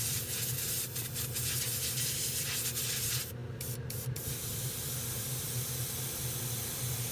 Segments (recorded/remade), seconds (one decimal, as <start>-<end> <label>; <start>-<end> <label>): 0.0-7.1 recorded